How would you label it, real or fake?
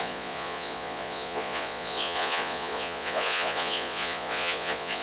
fake